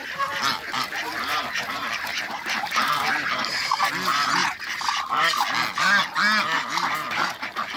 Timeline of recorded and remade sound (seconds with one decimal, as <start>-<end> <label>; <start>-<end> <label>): 0.0-3.9 remade; 3.9-4.4 recorded; 4.4-5.1 remade; 5.1-7.8 recorded